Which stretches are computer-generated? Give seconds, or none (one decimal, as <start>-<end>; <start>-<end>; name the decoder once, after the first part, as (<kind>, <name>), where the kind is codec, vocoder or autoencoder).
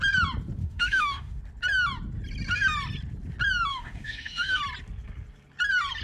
0.6-1.4 (autoencoder, DAC-VAE); 3.7-4.6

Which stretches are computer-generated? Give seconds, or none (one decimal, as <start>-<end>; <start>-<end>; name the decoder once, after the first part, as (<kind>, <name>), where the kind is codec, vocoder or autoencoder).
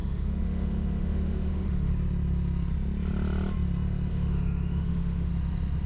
0.0-1.9 (autoencoder, DAC-VAE); 4.1-5.3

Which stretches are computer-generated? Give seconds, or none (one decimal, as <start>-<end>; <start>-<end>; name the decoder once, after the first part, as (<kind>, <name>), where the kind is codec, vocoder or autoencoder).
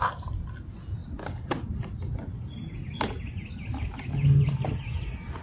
none